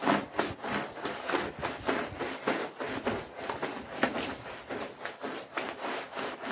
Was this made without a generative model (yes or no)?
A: no